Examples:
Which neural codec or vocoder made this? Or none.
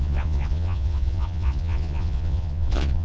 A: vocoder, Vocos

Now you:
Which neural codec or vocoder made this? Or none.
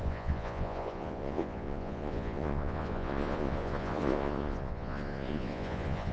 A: vocoder, Vocos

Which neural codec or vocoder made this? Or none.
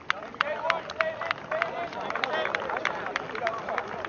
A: none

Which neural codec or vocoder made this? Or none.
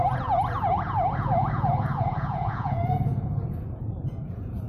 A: vocoder, Vocos